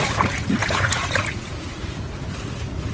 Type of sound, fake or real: fake